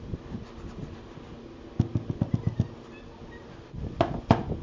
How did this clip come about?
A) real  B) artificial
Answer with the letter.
A